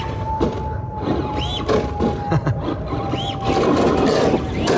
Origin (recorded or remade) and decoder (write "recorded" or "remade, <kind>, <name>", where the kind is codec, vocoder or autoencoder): recorded